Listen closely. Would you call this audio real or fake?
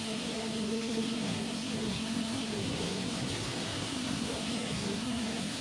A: fake